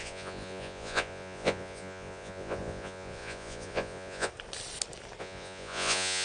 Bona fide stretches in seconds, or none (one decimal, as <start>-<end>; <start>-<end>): 4.3-5.2

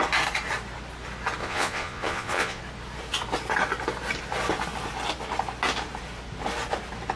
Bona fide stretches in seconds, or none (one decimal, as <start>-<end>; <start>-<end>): 0.0-1.4; 2.6-7.2

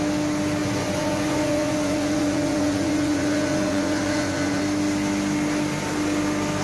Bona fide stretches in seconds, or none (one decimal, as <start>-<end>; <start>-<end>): 0.0-0.6; 4.6-6.6

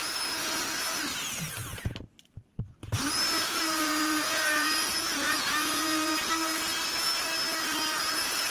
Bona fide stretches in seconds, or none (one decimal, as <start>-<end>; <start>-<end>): 0.0-3.6; 6.2-8.0

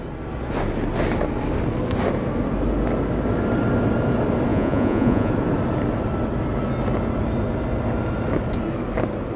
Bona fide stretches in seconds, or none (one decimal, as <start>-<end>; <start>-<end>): 0.0-4.5; 5.3-9.4

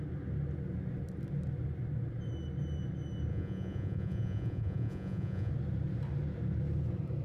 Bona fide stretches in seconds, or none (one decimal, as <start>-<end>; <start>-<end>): 0.0-3.3; 5.5-7.2

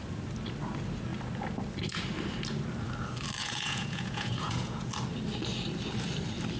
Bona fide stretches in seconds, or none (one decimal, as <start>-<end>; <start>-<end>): 0.0-3.4; 4.9-6.6

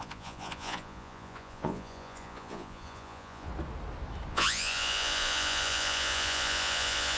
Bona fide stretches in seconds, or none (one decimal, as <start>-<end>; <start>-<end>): 3.5-4.3